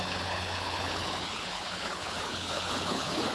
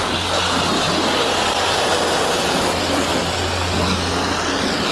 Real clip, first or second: second